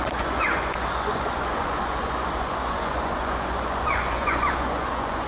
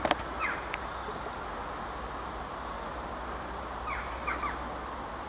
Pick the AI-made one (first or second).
first